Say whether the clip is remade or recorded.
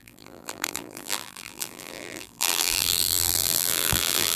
remade